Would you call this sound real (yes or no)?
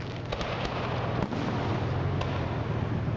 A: yes